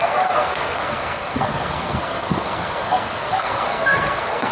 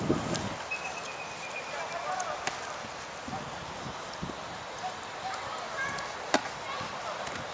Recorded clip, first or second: second